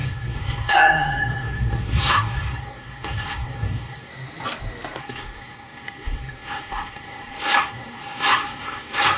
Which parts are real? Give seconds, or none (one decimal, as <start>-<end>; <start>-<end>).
4.1-5.0